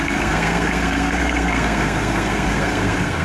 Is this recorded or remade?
remade